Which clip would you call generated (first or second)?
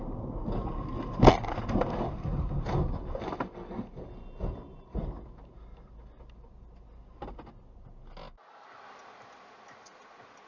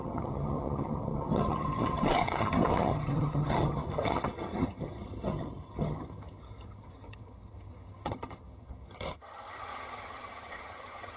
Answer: second